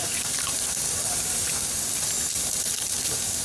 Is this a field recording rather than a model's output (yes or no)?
no